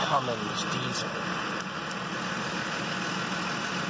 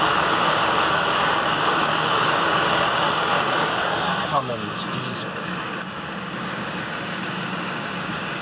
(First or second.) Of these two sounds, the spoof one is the second